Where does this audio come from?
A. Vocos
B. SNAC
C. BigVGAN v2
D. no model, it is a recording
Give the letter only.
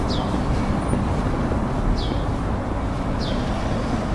D